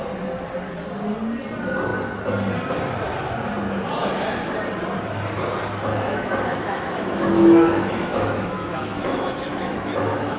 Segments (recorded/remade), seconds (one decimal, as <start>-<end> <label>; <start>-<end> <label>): 0.0-5.9 recorded; 5.9-10.4 remade